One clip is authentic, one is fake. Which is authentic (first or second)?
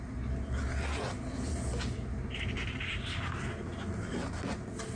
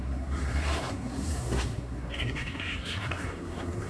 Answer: first